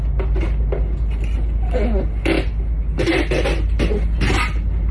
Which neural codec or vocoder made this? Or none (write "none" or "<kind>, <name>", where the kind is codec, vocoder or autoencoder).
none